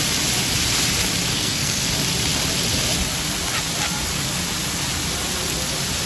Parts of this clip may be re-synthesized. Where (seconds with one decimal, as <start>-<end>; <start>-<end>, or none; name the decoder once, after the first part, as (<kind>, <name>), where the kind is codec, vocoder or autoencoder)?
1.3-1.9 (codec, SNAC)